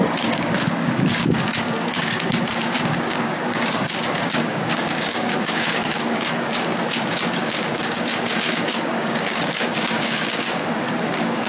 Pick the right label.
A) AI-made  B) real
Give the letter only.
A